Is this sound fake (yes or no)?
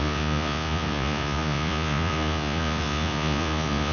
yes